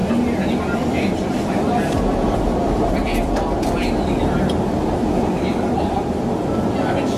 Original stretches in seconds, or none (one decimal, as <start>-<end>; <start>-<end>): 0.0-7.2